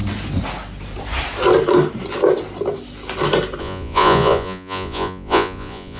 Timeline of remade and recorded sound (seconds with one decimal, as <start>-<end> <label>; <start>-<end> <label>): 0.0-3.6 recorded; 3.6-6.0 remade